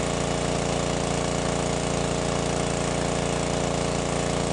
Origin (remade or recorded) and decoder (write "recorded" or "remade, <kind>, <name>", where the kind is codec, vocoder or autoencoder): recorded